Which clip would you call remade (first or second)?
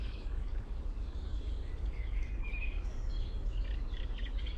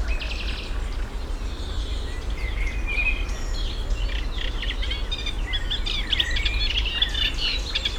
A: first